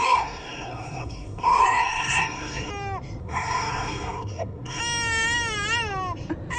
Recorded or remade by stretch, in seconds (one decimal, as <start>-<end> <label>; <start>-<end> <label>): 0.0-2.7 remade; 2.7-3.2 recorded; 3.2-4.8 remade; 4.8-6.6 recorded